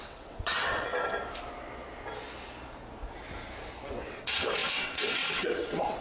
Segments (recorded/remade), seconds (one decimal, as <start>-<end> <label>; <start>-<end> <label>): 0.0-0.9 remade; 0.9-3.9 recorded; 3.9-6.0 remade